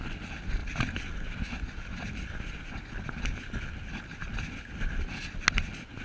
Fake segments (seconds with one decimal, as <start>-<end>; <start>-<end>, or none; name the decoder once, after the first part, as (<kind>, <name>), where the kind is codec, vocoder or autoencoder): none

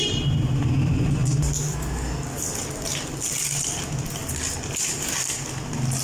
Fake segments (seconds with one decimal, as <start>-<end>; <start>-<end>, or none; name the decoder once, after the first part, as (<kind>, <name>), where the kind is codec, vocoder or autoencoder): none

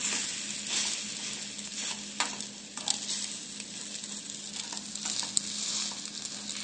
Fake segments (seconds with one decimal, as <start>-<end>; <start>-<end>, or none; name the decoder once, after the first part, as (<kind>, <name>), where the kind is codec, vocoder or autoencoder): none